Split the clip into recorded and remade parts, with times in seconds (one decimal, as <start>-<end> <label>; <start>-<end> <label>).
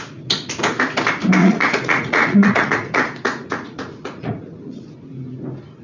0.0-1.4 recorded; 1.4-4.9 remade; 4.9-5.8 recorded